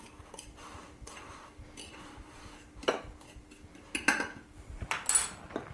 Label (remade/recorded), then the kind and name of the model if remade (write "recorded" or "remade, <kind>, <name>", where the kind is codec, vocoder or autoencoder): recorded